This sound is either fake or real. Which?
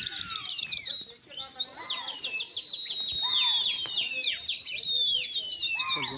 real